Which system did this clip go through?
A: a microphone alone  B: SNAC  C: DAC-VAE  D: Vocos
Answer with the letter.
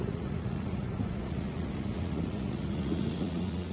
D